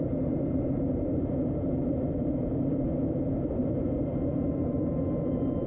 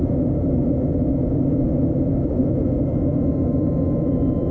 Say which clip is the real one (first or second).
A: second